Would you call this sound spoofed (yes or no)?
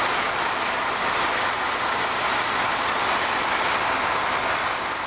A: no